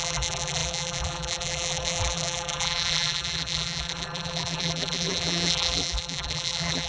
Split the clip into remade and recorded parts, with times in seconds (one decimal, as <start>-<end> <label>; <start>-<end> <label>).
0.0-6.9 remade